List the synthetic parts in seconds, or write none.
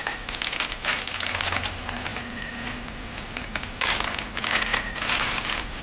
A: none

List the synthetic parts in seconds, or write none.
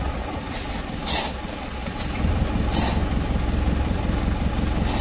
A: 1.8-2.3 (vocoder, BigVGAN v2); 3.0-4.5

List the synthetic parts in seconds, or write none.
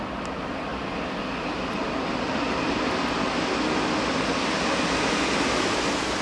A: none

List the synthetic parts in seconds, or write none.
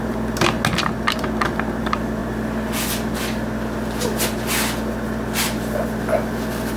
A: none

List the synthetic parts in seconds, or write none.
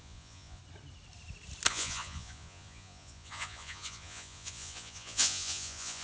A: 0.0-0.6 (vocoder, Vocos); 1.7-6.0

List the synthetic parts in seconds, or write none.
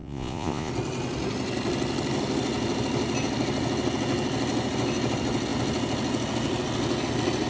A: 0.0-0.7 (vocoder, Vocos)